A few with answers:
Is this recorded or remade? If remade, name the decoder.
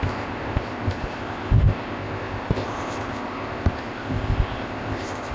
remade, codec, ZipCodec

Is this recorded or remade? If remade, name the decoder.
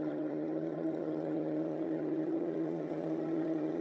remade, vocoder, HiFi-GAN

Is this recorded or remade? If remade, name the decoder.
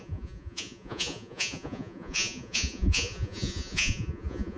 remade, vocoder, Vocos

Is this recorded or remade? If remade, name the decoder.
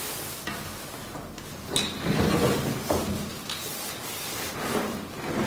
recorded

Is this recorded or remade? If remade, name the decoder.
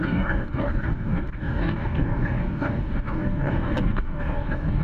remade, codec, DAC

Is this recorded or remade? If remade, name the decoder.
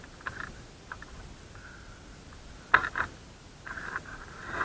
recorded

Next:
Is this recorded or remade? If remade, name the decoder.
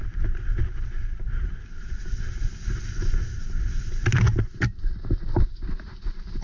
recorded